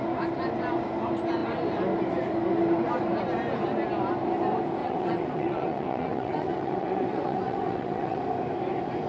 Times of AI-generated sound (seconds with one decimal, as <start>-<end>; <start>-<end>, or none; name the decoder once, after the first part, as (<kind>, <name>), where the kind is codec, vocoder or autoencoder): 4.8-8.2 (vocoder, WaveNeXt)